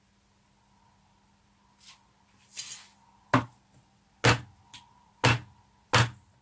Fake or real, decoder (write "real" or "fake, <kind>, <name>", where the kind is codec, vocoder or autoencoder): real